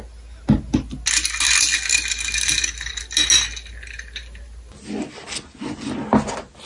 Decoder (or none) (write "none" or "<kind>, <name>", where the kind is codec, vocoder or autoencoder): none